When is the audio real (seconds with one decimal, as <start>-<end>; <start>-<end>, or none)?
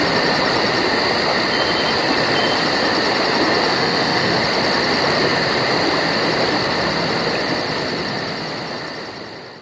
0.0-3.7; 4.4-9.6